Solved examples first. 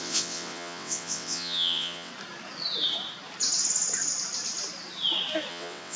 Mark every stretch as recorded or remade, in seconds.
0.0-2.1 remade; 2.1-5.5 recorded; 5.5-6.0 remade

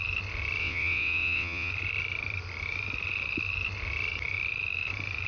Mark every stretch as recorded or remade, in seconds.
0.0-0.6 recorded; 0.6-1.7 remade; 1.7-5.3 recorded

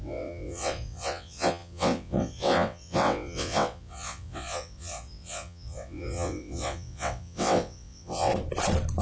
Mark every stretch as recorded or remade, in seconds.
0.0-8.3 remade; 8.3-9.0 recorded

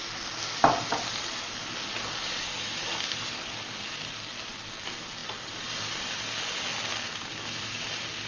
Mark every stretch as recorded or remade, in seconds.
0.0-8.3 recorded

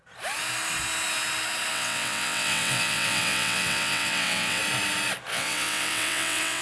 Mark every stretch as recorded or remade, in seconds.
0.0-1.7 recorded; 1.7-4.6 remade; 4.6-5.3 recorded; 5.3-6.6 remade